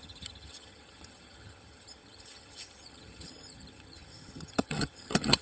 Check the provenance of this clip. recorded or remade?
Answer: remade